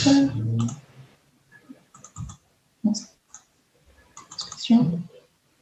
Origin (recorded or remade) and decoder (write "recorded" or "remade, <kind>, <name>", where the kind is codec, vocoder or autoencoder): recorded